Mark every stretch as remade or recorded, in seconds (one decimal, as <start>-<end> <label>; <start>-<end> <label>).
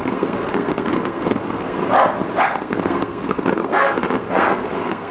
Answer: 0.0-1.8 remade; 1.8-2.4 recorded; 2.4-5.1 remade